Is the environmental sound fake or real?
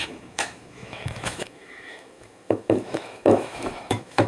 fake